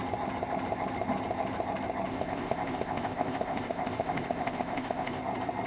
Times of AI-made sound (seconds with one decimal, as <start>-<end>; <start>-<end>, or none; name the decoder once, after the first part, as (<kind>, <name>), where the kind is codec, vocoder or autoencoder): 2.1-5.2 (codec, ZipCodec)